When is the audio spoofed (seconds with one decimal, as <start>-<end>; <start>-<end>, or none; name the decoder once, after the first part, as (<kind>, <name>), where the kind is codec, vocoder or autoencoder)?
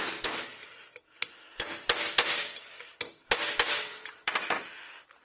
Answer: 3.9-4.7 (vocoder, BigVGAN v2)